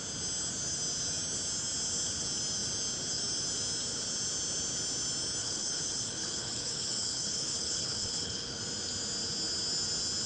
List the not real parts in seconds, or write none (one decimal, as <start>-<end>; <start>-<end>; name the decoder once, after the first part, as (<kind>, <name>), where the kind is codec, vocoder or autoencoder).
5.4-8.6 (codec, HILCodec)